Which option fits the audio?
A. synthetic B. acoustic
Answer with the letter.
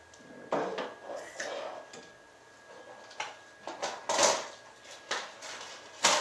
B